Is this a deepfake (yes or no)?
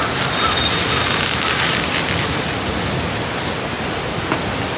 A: no